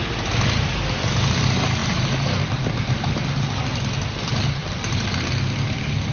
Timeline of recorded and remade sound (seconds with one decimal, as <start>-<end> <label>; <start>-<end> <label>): 0.0-1.8 recorded; 1.8-3.3 remade; 3.3-4.6 recorded; 4.6-5.3 remade; 5.3-6.1 recorded